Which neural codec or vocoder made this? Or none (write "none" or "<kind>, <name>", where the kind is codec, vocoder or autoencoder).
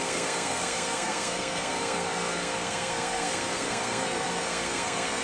codec, SNAC